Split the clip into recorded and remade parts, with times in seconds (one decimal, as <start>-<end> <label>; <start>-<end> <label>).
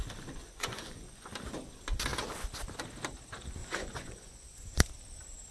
0.0-0.4 recorded; 0.4-1.3 remade; 1.3-3.6 recorded; 3.6-4.9 remade; 4.9-5.5 recorded